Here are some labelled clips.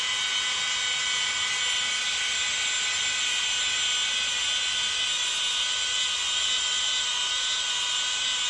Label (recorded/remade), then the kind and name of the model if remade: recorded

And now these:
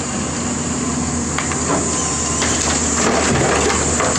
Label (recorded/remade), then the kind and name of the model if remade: recorded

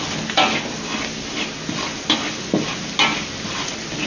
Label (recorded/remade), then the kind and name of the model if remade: recorded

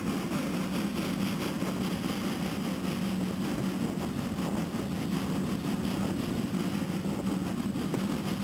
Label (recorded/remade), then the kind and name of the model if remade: recorded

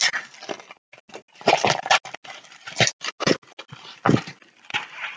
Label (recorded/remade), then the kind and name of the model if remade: recorded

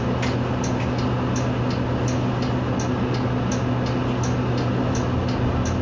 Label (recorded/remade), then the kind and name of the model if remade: recorded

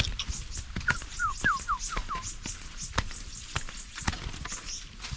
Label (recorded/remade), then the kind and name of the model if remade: recorded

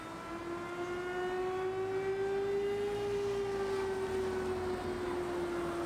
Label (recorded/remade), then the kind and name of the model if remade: recorded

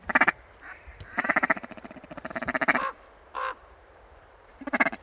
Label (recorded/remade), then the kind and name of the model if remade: remade, vocoder, BigVGAN v2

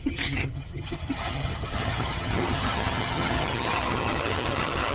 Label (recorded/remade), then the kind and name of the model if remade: remade, vocoder, HiFi-GAN